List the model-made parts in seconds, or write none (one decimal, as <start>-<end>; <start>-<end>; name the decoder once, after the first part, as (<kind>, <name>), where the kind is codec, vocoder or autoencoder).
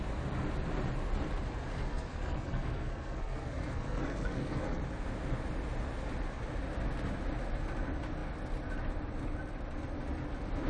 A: 1.9-4.8 (codec, SNAC)